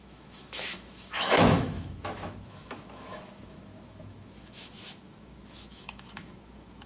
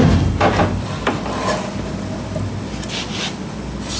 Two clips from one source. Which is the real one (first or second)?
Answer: second